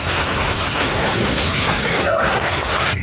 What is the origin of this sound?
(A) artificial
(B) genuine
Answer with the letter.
A